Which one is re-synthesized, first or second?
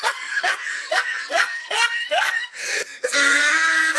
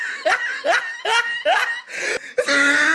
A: first